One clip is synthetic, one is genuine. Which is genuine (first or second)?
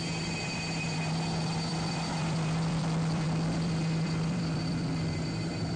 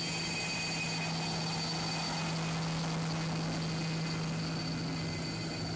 second